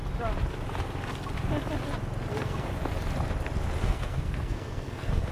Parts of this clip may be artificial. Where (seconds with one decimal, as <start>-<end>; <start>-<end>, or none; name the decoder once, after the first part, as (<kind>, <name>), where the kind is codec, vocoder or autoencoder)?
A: 2.3-2.7 (codec, SNAC); 3.8-5.3